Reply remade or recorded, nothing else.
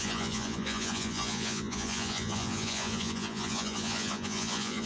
remade